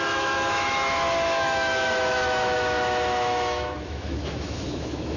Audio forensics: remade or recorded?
remade